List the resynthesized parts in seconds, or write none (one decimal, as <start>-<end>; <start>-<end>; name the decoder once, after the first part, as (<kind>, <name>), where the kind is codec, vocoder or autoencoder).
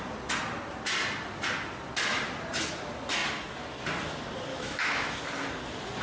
4.5-5.2 (autoencoder, DAC-VAE)